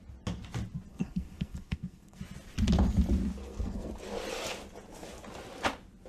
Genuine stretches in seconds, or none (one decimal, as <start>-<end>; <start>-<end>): 0.0-0.9; 2.2-3.4; 3.9-6.1